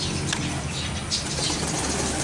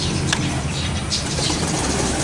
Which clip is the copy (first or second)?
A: second